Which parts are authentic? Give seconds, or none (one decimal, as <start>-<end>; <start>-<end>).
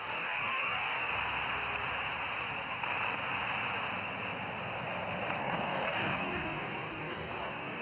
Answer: 1.1-5.4